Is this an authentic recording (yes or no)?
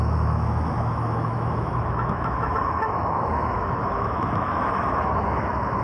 no